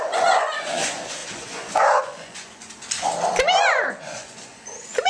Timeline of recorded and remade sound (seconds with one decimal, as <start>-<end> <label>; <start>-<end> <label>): 0.0-2.6 remade; 2.6-3.6 recorded; 3.6-5.1 remade